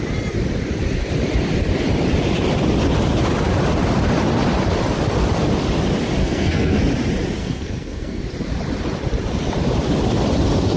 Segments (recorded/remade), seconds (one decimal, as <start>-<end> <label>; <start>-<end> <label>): 0.0-6.2 recorded; 6.2-6.8 remade; 6.8-7.4 recorded; 7.4-8.2 remade; 8.2-10.8 recorded